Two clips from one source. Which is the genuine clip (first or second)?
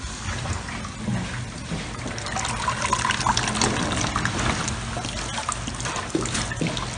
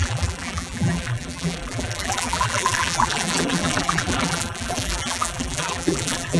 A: first